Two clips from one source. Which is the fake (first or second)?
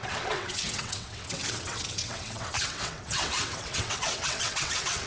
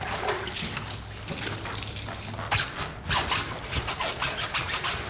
first